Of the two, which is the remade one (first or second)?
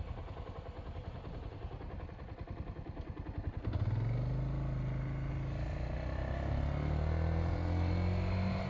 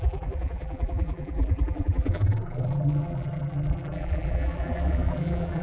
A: second